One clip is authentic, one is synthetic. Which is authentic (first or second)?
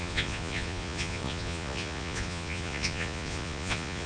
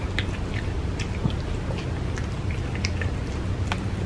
second